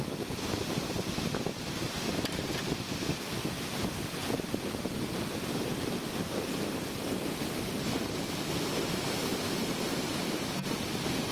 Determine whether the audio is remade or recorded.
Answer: recorded